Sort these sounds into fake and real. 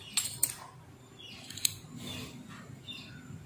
real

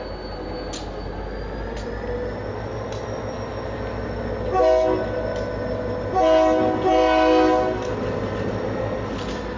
real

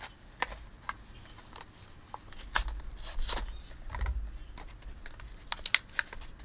real